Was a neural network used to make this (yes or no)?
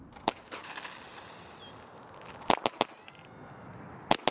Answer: no